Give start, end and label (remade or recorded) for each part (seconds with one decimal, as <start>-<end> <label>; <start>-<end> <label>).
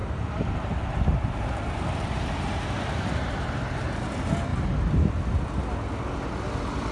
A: 0.0-4.0 remade; 4.0-4.5 recorded; 4.5-5.1 remade; 5.1-6.9 recorded